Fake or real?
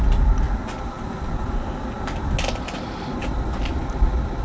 real